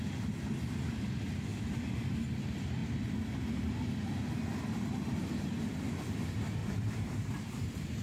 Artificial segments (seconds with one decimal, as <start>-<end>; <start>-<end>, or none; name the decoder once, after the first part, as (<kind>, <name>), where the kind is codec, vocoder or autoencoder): 1.5-2.1 (vocoder, BigVGAN v2); 6.6-8.0